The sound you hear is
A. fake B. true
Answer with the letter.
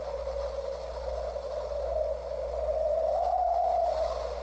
B